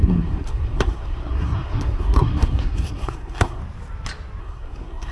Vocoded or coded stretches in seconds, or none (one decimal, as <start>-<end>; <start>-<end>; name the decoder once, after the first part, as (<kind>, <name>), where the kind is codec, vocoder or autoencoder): 0.0-3.6 (codec, SNAC); 4.4-5.1